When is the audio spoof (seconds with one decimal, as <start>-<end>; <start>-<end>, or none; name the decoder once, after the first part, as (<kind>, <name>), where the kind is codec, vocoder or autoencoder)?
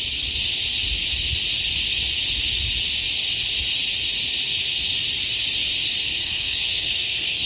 6.1-7.5 (codec, SNAC)